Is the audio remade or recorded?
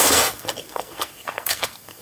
remade